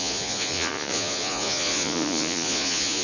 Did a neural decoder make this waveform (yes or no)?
yes